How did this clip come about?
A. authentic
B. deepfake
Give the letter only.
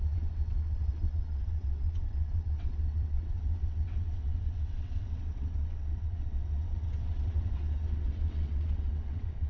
B